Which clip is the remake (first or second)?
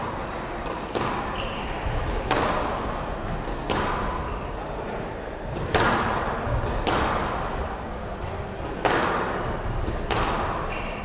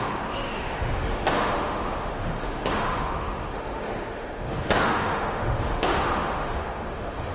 second